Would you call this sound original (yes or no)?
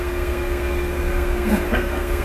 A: no